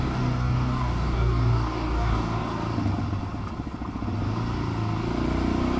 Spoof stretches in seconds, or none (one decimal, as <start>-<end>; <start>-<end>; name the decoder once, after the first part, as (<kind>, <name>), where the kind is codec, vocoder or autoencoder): 0.0-2.5 (codec, DAC)